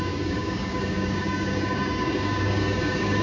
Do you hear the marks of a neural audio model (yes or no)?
yes